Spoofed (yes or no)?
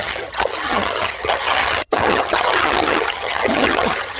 yes